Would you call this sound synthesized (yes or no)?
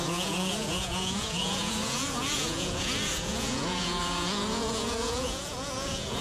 yes